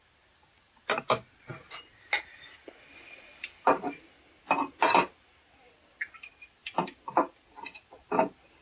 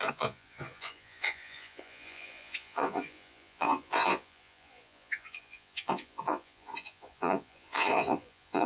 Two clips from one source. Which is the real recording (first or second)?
first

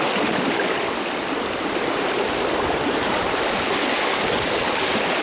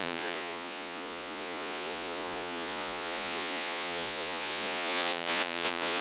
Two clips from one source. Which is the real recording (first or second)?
first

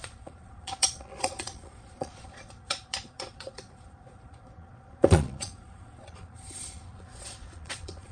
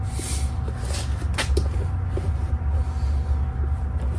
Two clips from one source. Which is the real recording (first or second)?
second